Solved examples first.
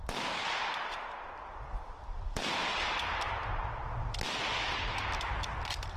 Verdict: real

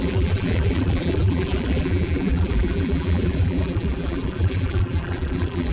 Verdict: fake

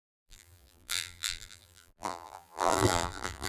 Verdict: fake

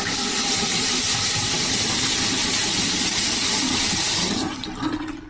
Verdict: fake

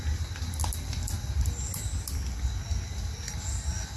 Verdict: real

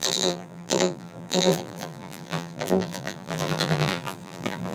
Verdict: fake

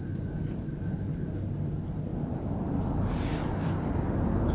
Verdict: real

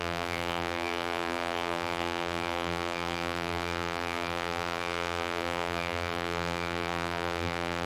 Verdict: fake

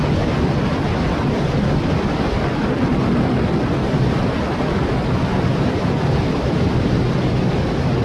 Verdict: fake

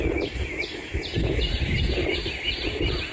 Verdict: real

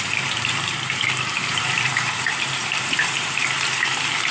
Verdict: fake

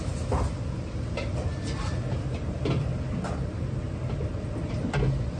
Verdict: real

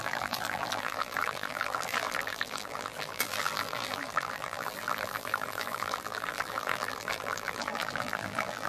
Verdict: fake